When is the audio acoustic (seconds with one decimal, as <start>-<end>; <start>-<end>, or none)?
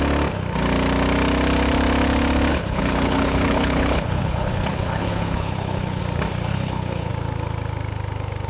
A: 0.0-2.5; 6.0-6.5; 7.1-8.5